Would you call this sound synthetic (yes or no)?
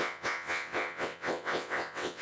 yes